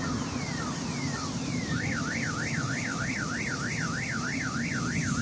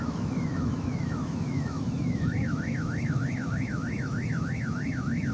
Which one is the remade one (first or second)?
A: second